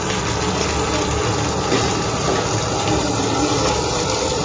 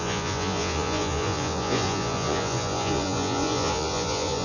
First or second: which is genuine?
first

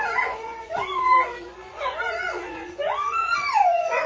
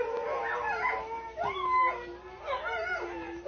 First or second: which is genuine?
second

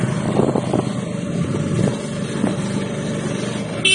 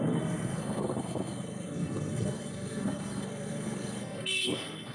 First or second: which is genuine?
first